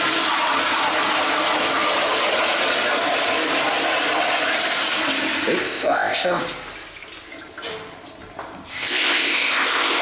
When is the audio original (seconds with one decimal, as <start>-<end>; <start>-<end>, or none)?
0.0-5.6; 6.4-8.7